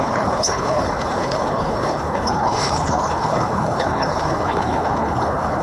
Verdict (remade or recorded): remade